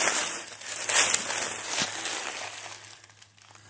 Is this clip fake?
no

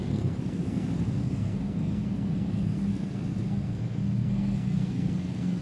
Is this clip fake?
yes